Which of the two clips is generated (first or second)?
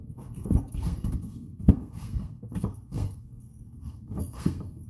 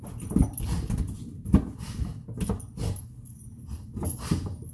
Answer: first